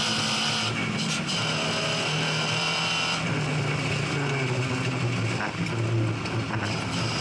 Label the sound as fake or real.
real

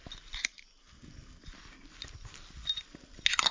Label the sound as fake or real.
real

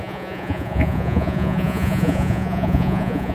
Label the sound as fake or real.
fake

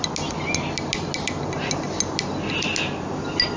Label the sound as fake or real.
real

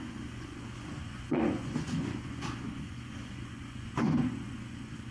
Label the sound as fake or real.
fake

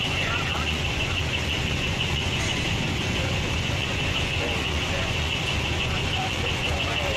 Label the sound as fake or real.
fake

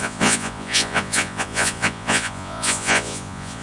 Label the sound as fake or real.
fake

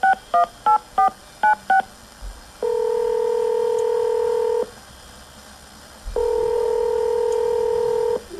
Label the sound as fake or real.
real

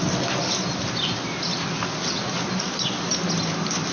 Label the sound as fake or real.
real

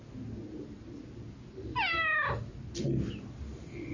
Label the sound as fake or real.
real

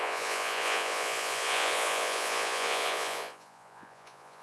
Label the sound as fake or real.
fake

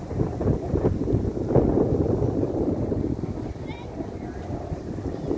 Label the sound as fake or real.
real